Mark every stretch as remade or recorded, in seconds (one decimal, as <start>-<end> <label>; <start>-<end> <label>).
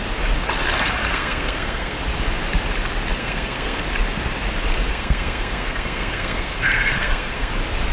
0.0-1.0 recorded; 1.0-2.0 remade; 2.0-3.2 recorded; 3.2-3.8 remade; 3.8-4.9 recorded; 4.9-7.5 remade; 7.5-7.9 recorded